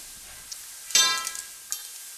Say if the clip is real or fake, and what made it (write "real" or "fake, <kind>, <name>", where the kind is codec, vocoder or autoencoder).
real